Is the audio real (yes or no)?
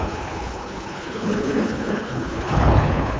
no